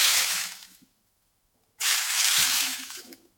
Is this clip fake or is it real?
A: fake